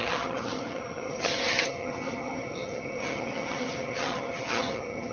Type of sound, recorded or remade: remade